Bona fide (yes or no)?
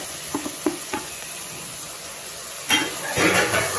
no